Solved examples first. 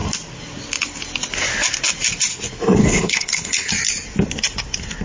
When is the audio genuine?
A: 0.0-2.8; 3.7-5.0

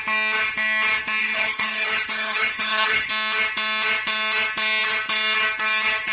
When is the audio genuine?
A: 0.0-1.2; 3.1-6.1

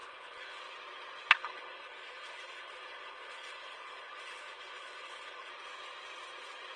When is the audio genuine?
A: 0.6-1.4; 5.5-6.8

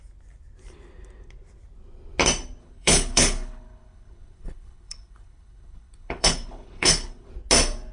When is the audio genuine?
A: 0.0-2.6; 7.3-7.9